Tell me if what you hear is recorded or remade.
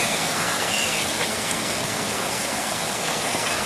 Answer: remade